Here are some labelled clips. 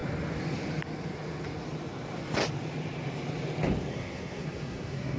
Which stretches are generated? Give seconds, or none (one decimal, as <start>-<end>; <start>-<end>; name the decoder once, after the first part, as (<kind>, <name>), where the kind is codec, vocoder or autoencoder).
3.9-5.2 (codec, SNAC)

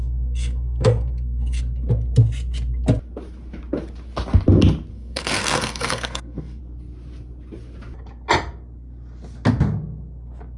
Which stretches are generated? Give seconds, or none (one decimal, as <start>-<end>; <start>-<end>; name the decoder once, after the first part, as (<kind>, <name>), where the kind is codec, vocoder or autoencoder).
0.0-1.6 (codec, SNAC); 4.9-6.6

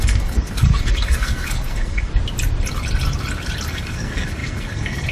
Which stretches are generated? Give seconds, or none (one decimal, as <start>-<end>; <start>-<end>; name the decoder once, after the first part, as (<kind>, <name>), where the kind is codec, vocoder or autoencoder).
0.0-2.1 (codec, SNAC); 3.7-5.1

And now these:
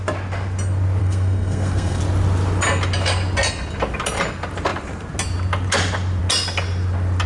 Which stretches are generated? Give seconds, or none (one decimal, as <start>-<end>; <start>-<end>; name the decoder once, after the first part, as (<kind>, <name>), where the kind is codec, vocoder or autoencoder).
1.0-2.0 (codec, SNAC)

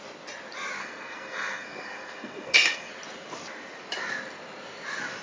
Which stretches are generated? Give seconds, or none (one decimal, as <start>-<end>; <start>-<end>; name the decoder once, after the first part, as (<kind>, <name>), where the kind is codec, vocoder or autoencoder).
0.8-2.9 (codec, SNAC)